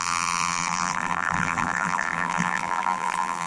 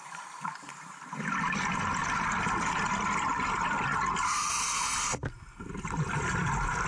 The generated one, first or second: first